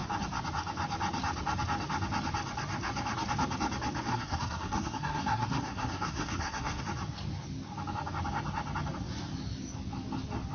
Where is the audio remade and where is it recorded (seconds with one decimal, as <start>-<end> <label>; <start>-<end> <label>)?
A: 0.0-4.1 recorded; 4.1-6.8 remade; 6.8-10.5 recorded